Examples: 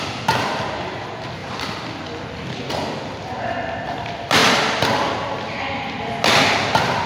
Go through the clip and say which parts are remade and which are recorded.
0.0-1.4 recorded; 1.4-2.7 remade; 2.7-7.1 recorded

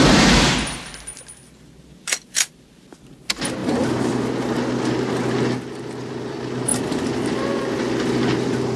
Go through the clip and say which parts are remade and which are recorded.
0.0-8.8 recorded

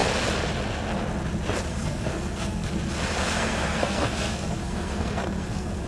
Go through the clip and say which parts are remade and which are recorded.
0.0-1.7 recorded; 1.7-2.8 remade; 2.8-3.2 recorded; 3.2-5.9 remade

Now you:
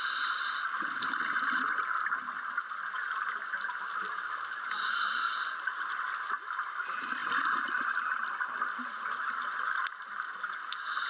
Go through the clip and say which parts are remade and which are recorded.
0.0-11.1 recorded

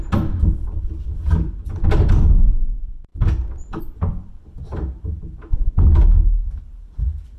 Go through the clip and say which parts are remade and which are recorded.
0.0-3.1 remade; 3.1-3.8 recorded; 3.8-5.7 remade; 5.7-6.6 recorded; 6.6-7.4 remade

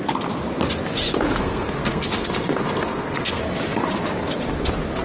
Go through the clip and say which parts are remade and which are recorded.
0.0-1.4 recorded; 1.4-3.4 remade; 3.4-5.0 recorded

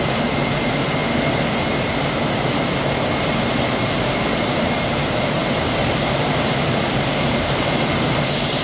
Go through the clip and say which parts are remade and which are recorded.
0.0-1.0 remade; 1.0-3.8 recorded; 3.8-8.6 remade

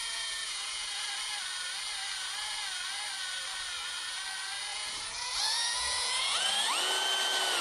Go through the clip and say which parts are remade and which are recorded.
0.0-1.1 remade; 1.1-4.7 recorded; 4.7-6.5 remade; 6.5-7.6 recorded